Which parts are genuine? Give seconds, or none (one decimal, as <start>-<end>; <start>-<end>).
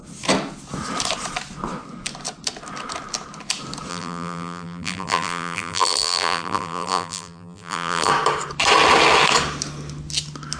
0.0-3.9; 8.1-10.6